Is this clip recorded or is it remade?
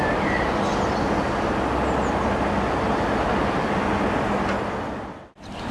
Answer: recorded